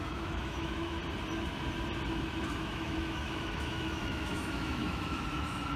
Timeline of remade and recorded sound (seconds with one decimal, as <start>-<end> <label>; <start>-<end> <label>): 0.0-1.0 remade; 1.0-2.6 recorded; 2.6-5.8 remade